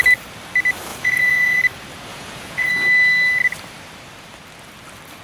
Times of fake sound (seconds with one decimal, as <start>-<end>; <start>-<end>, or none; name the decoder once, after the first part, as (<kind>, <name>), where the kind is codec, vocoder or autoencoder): 0.9-1.6 (vocoder, Vocos); 2.1-2.7